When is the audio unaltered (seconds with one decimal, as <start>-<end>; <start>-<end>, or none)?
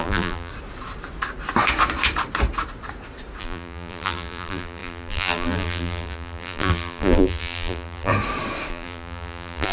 0.5-3.4; 8.1-8.7